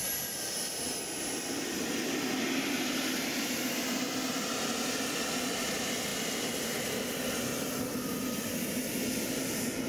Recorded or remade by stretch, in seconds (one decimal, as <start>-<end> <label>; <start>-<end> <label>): 0.0-9.9 recorded